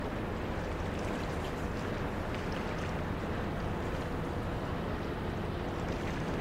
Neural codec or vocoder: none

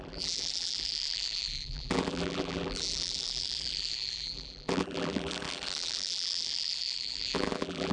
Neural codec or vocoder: vocoder, BigVGAN v2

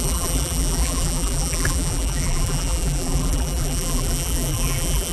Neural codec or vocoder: vocoder, BigVGAN v2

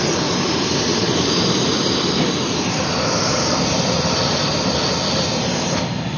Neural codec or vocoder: none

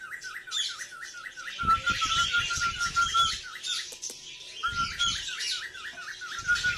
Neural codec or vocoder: none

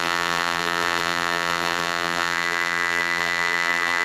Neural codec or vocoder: vocoder, BigVGAN v2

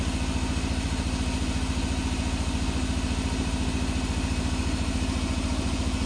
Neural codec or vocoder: none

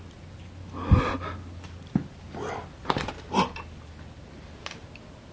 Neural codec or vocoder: none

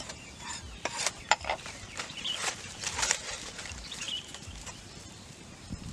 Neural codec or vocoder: vocoder, BigVGAN v2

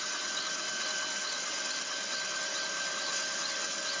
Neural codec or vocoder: vocoder, BigVGAN v2